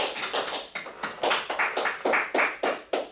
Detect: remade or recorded recorded